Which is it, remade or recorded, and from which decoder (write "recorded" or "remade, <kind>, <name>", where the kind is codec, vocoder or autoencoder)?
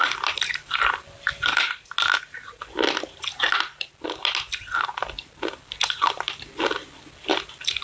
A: recorded